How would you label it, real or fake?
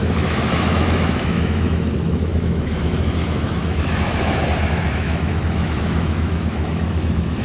fake